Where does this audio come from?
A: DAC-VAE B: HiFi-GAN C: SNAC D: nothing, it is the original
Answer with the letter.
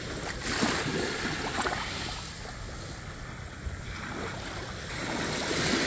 D